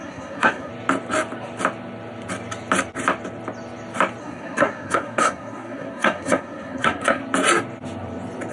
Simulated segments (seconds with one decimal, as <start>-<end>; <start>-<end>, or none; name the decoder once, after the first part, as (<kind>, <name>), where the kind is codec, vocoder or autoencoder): 0.0-0.7 (codec, SNAC); 4.2-7.2